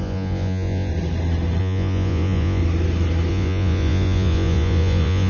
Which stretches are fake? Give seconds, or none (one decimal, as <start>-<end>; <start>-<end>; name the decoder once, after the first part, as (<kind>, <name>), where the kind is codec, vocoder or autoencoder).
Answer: 0.0-0.9 (vocoder, Vocos); 1.6-2.6; 3.3-5.3